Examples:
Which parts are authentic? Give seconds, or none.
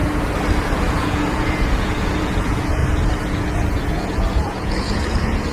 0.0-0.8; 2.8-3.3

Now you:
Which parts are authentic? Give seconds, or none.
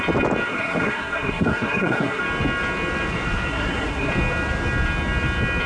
0.0-0.5; 2.2-3.5; 4.1-5.7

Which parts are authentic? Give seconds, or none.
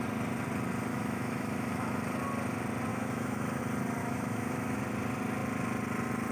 0.0-0.9; 2.0-2.9; 3.6-4.0; 4.8-6.3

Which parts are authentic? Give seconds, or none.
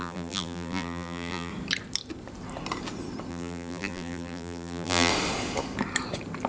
1.5-3.3; 5.1-6.5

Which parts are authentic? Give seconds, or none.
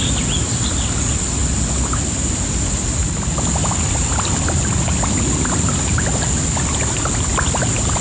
0.0-8.0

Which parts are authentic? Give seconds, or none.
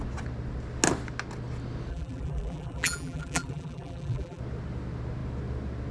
0.0-1.9; 4.4-5.9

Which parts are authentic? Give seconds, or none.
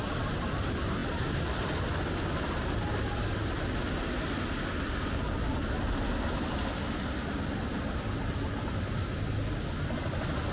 0.0-10.5